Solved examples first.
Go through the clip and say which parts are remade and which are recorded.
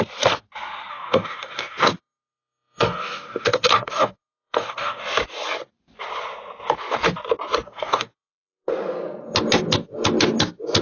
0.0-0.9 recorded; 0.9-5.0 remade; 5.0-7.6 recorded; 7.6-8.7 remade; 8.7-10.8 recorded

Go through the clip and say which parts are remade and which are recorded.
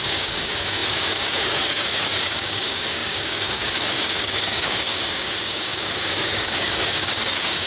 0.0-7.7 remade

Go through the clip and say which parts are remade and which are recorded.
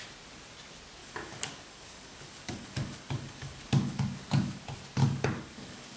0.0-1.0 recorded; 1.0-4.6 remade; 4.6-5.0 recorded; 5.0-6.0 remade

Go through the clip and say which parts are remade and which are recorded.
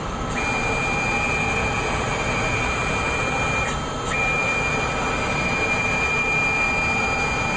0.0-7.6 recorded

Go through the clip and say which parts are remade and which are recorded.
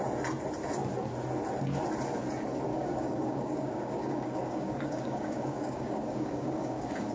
0.0-2.7 recorded; 2.7-7.1 remade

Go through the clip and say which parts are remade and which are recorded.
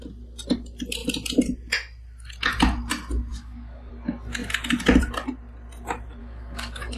0.0-3.3 recorded; 3.3-3.9 remade; 3.9-6.2 recorded; 6.2-7.0 remade